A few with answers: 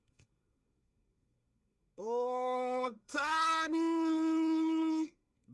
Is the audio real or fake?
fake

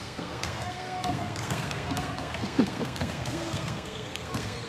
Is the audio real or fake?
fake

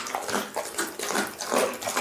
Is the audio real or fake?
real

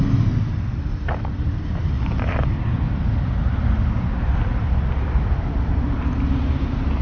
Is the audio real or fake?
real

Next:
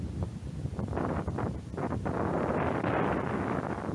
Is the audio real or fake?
real